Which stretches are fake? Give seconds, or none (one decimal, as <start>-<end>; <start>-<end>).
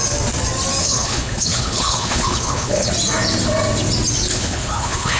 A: 0.8-2.9; 4.3-5.2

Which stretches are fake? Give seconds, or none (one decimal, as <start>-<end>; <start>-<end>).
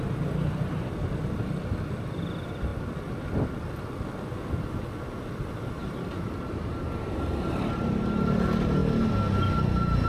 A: none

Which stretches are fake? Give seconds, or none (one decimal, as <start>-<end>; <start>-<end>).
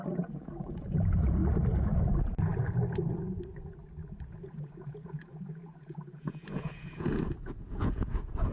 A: 0.0-1.4; 4.2-8.5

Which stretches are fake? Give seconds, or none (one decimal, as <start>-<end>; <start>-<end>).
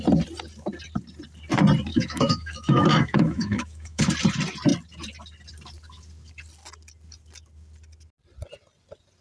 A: 1.9-4.1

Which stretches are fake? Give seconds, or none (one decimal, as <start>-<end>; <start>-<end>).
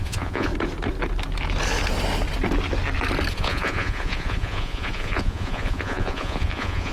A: 0.0-0.5; 3.3-6.9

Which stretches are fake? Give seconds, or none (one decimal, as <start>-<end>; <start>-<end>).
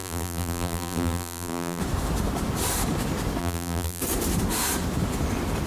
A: 0.0-1.8; 3.4-4.0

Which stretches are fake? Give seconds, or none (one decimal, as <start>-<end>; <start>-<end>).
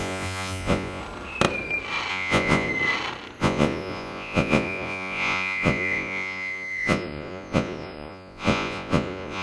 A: 0.0-1.0; 2.1-2.7; 3.4-9.4